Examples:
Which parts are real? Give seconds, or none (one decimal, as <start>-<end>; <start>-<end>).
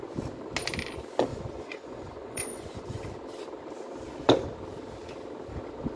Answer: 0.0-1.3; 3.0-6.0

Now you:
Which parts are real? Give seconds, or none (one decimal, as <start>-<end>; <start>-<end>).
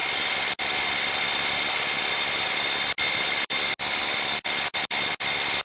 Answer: 0.0-5.6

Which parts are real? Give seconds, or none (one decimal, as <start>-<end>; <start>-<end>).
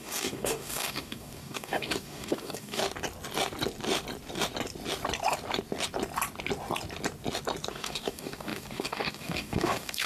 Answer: 2.8-7.7